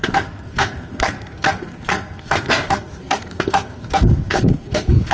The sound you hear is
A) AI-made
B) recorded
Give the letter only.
A